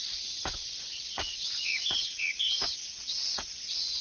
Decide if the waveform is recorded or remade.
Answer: remade